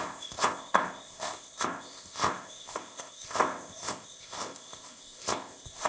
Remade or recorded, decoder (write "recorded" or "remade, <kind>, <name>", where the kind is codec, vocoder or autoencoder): remade, codec, ZipCodec